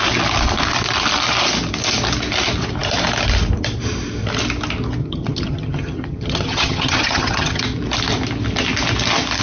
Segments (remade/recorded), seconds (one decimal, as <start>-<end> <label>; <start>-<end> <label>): 0.0-5.0 recorded; 5.0-7.6 remade; 7.6-9.4 recorded